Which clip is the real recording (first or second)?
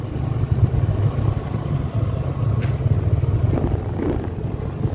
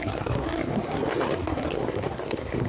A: first